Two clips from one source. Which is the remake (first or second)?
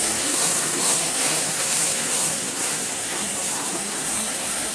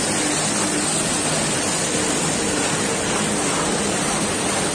first